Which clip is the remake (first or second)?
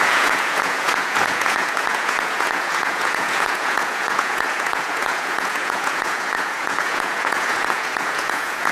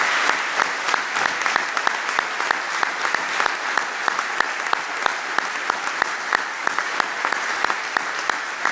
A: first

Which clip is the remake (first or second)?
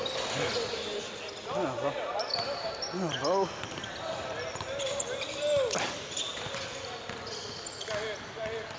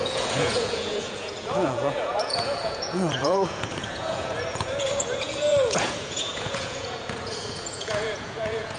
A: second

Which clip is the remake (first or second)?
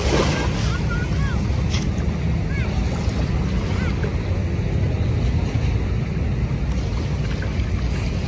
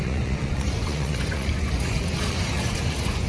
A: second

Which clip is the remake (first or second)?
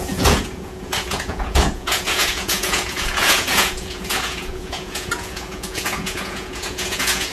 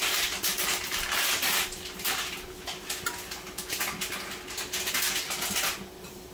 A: first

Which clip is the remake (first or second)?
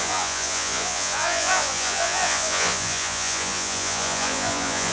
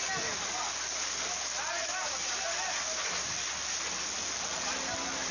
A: first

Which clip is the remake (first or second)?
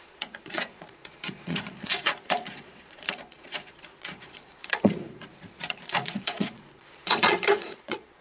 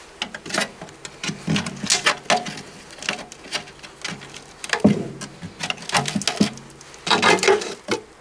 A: first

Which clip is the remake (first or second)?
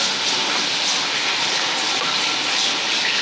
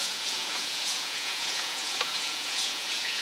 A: second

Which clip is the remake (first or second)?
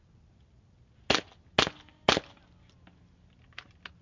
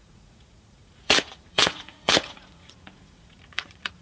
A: second